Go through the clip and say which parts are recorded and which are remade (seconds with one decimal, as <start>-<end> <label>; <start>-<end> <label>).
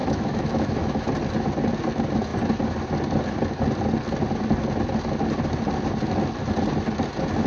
0.0-1.1 remade; 1.1-7.5 recorded